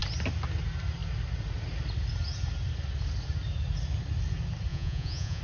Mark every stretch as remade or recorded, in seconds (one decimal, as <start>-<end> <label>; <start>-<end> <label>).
0.0-4.7 recorded; 4.7-5.4 remade